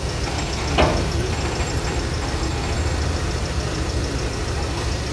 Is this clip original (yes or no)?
yes